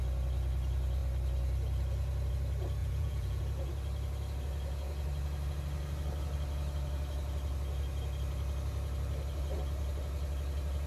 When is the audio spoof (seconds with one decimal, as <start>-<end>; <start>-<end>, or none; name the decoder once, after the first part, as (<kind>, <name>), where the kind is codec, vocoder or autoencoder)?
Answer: 2.8-3.4 (vocoder, Vocos)